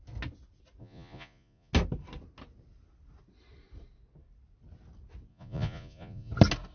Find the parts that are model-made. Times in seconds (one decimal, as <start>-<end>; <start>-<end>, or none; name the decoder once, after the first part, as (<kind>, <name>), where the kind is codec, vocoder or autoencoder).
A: 0.8-1.7 (vocoder, Vocos); 5.3-6.3